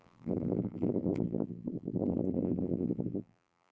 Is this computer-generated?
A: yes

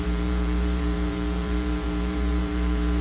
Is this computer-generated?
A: yes